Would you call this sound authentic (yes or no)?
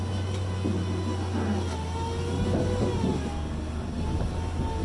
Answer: yes